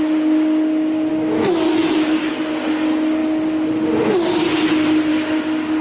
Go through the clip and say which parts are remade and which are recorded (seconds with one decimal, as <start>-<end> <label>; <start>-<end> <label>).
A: 0.0-1.1 recorded; 1.1-2.3 remade; 2.3-5.8 recorded